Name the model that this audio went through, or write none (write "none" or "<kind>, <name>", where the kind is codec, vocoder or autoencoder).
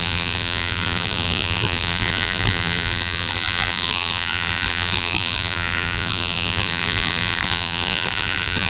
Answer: vocoder, BigVGAN v2